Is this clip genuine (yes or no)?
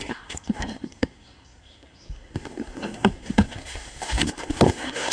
no